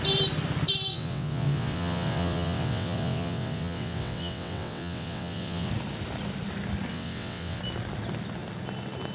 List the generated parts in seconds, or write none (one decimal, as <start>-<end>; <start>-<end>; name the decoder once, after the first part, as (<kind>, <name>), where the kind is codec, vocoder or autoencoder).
0.9-5.7 (vocoder, WaveNeXt); 6.9-7.6